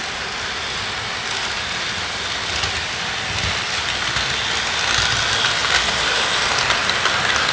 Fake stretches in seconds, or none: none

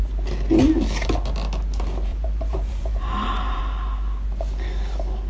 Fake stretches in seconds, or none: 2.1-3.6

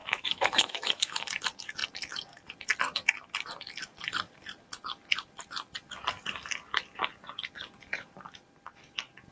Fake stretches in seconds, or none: 0.0-1.3

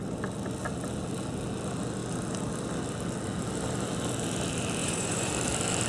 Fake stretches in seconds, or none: 4.8-5.3

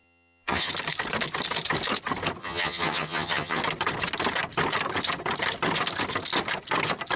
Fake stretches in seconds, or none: 0.0-0.7; 2.4-3.6

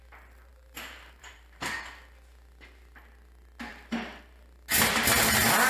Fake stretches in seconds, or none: 0.5-1.8

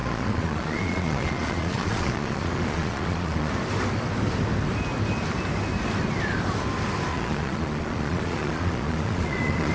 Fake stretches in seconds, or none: 0.0-3.5; 7.1-9.7